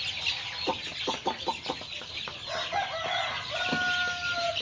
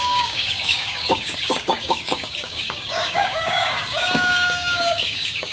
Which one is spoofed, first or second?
second